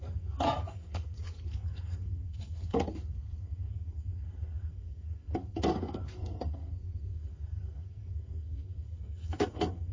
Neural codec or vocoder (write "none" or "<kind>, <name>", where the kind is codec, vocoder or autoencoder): codec, SNAC